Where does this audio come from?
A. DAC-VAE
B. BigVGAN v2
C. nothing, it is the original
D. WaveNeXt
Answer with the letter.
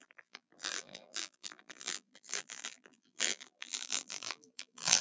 B